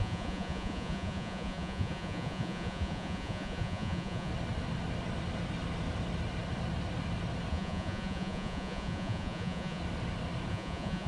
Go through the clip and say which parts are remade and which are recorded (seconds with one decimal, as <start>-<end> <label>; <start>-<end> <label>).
0.0-4.3 remade; 4.3-7.5 recorded; 7.5-9.8 remade; 9.8-10.5 recorded; 10.5-11.1 remade

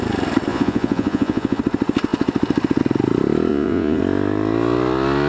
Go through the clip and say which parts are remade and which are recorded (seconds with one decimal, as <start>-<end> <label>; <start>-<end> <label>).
0.0-0.5 recorded; 0.5-1.6 remade; 1.6-3.5 recorded; 3.5-4.0 remade; 4.0-5.3 recorded